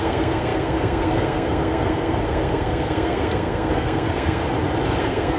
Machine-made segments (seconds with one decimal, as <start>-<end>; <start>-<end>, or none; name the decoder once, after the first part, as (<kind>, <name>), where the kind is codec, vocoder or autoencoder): 0.0-4.4 (codec, SNAC); 5.0-5.4